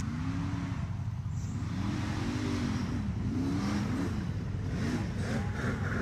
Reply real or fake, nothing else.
real